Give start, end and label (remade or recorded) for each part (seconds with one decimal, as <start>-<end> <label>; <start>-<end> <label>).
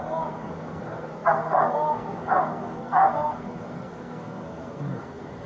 0.0-5.5 remade